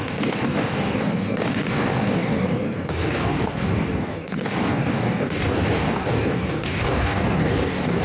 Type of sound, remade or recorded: remade